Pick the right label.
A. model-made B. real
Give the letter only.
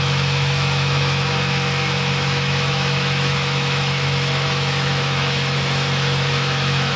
A